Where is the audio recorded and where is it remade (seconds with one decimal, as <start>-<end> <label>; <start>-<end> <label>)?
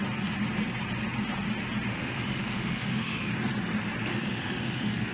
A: 0.0-1.9 recorded; 1.9-3.3 remade; 3.3-4.1 recorded; 4.1-5.1 remade